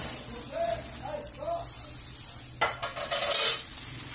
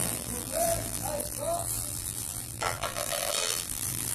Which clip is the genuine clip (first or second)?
first